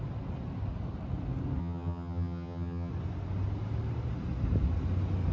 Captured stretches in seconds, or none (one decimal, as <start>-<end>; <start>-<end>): 0.0-1.6; 2.9-5.3